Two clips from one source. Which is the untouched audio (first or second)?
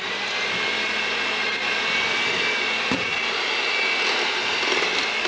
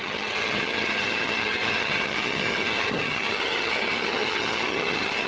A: first